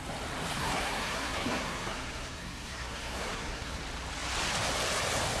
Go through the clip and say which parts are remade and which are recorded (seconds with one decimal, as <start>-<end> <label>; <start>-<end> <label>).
0.0-0.6 recorded; 0.6-3.8 remade; 3.8-5.4 recorded